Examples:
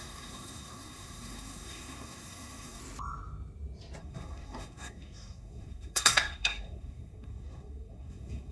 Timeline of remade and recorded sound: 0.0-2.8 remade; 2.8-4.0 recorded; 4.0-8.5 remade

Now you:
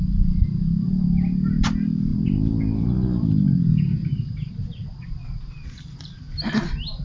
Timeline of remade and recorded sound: 0.0-7.0 recorded

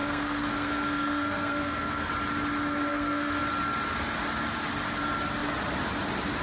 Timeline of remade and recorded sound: 0.0-2.1 remade; 2.1-2.9 recorded; 2.9-3.4 remade; 3.4-6.4 recorded

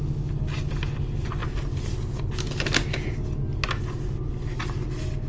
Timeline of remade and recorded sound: 0.0-5.3 recorded

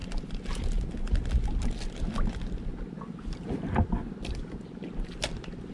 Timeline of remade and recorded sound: 0.0-5.7 recorded

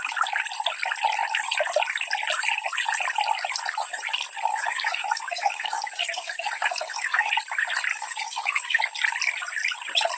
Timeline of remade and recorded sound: 0.0-4.5 recorded; 4.5-7.3 remade; 7.3-7.9 recorded; 7.9-8.8 remade; 8.8-10.2 recorded

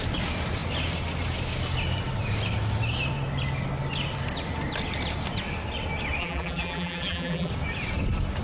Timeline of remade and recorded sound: 0.0-6.2 recorded; 6.2-7.5 remade; 7.5-8.4 recorded

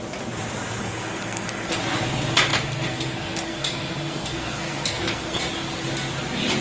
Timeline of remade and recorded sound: 0.0-0.8 recorded; 0.8-1.8 remade; 1.8-2.5 recorded; 2.5-5.4 remade; 5.4-6.6 recorded